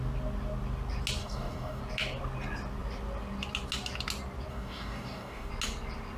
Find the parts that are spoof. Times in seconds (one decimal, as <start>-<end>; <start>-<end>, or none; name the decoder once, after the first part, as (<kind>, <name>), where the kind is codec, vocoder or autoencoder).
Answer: 1.2-1.8 (codec, DAC); 4.5-5.5